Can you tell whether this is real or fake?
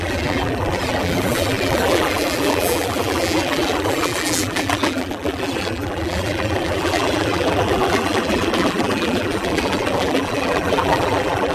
fake